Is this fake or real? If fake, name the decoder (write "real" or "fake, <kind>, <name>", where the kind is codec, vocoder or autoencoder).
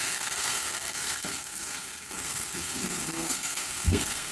fake, codec, SNAC